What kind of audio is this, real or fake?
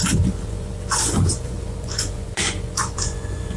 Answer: fake